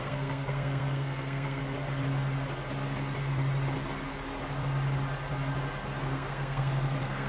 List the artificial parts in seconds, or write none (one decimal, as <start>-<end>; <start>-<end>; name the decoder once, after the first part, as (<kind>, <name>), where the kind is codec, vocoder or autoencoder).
0.0-1.6 (codec, SNAC); 6.0-7.3